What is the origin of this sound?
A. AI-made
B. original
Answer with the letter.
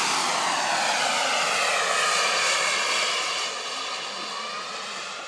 B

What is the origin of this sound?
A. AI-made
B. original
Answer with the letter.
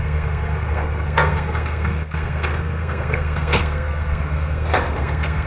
A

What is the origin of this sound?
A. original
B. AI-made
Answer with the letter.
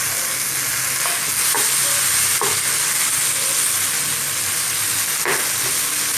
A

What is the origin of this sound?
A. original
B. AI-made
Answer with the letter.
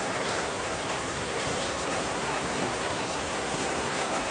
B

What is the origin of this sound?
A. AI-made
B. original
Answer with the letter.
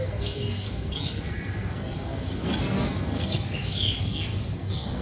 A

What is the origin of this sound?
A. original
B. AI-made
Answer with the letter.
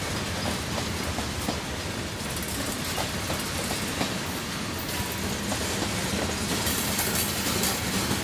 A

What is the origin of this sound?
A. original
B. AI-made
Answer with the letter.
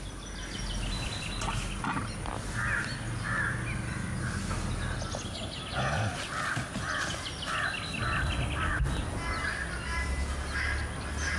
A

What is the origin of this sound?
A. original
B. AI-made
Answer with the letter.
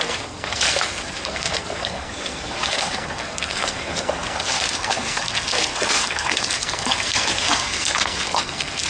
B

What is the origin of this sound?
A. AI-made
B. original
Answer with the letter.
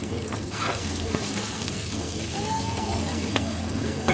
A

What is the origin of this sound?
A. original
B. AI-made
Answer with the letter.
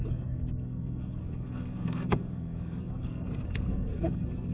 B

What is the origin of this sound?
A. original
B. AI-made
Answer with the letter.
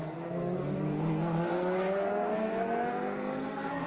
B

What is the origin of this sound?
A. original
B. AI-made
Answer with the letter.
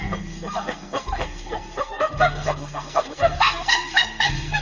B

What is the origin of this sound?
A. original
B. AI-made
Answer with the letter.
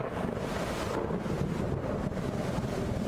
A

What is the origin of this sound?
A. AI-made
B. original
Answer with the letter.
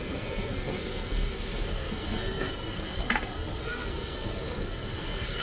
A